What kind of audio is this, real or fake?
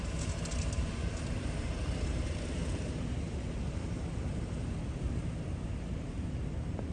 fake